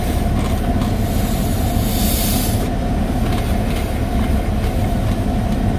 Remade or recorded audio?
recorded